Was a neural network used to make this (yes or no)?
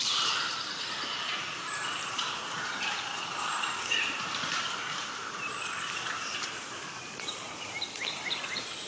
yes